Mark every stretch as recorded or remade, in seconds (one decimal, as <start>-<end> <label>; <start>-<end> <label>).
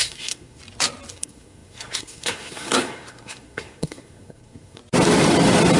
0.0-0.6 remade; 0.6-1.1 recorded; 1.1-4.8 remade; 4.8-5.8 recorded